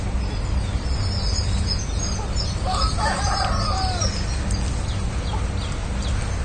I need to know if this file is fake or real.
real